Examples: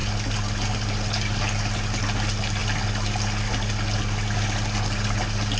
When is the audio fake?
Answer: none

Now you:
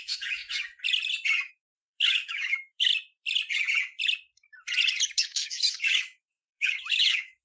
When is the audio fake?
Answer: 0.0-0.4 (autoencoder, DAC-VAE); 1.5-2.9; 5.2-7.4

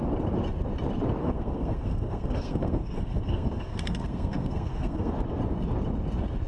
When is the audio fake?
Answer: 1.2-5.1 (codec, SNAC)

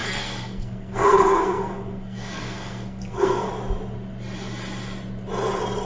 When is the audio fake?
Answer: 0.0-3.5 (codec, SNAC)

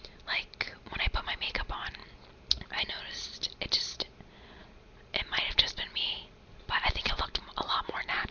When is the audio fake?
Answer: none